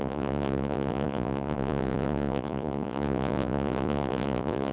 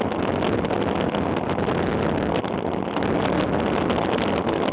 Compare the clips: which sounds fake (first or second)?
first